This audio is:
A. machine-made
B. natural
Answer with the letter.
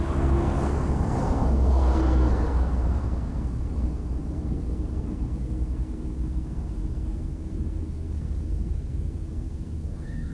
A